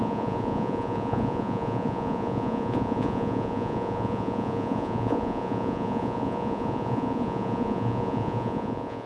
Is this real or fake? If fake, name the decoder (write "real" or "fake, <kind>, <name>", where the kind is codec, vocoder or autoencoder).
fake, vocoder, Vocos